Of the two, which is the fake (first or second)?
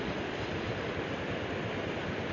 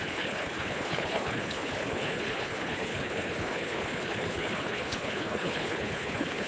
second